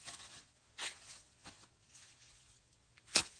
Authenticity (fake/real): fake